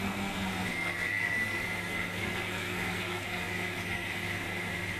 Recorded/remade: remade